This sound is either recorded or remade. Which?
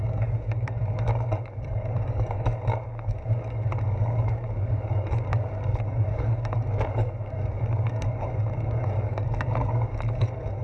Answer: remade